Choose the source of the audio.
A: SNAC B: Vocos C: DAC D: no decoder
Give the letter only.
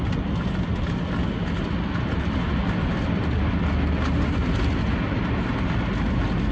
D